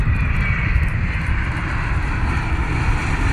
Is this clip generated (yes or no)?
no